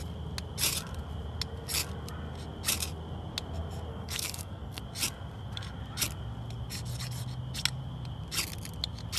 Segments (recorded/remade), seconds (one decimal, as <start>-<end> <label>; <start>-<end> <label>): 0.0-3.9 recorded; 3.9-4.8 remade; 4.8-9.2 recorded